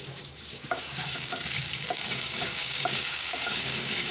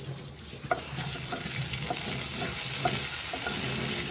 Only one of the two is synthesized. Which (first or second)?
first